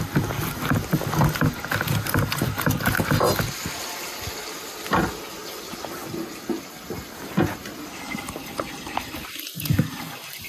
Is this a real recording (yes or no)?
yes